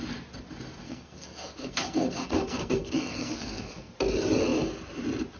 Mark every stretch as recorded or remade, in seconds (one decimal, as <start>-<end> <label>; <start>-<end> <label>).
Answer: 0.0-0.8 recorded; 0.8-3.9 remade; 3.9-5.4 recorded